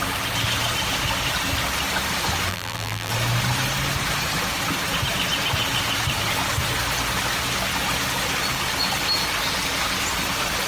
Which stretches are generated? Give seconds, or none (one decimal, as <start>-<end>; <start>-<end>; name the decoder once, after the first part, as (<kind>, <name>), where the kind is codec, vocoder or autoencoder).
2.5-3.1 (vocoder, BigVGAN v2)